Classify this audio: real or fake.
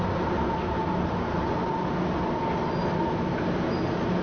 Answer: real